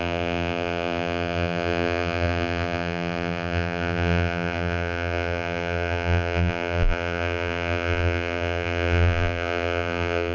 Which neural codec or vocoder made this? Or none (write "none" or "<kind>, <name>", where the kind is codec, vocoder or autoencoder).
vocoder, BigVGAN v2